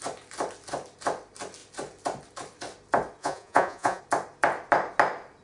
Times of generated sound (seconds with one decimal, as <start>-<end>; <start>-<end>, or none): 3.2-4.0